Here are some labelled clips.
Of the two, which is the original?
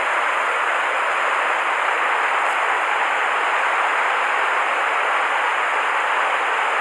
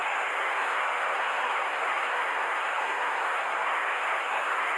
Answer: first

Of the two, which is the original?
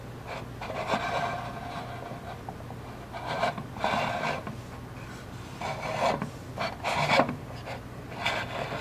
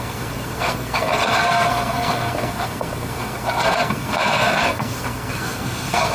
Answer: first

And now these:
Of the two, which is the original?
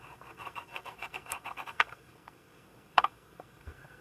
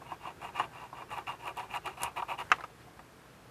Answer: second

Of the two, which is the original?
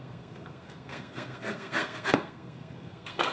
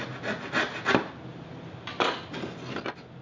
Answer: second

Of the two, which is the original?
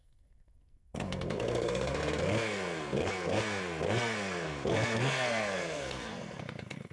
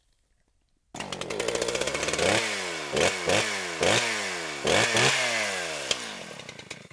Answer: second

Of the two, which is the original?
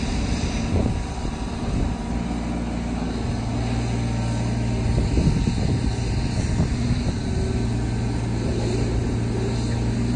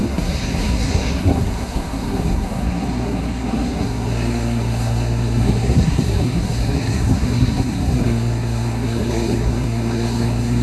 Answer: first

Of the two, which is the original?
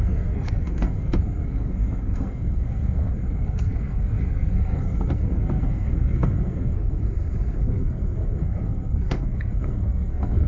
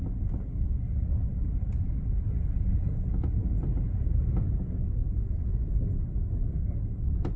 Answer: second